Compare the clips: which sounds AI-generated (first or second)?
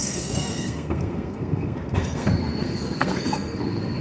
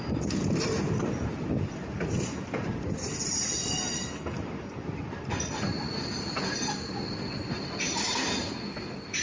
first